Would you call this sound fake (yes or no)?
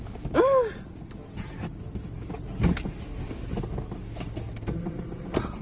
no